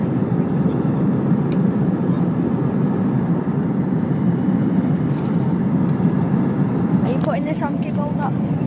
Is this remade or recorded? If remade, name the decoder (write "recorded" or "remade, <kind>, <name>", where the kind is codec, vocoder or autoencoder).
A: remade, vocoder, BigVGAN v2